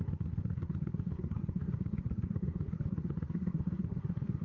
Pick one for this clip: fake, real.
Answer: fake